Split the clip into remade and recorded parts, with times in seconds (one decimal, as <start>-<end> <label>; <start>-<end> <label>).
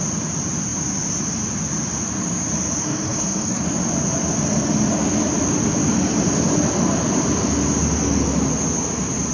0.0-2.8 recorded; 2.8-3.6 remade; 3.6-9.3 recorded